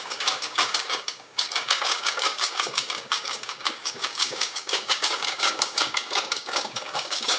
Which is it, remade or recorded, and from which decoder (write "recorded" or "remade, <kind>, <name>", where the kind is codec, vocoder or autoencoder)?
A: remade, codec, DAC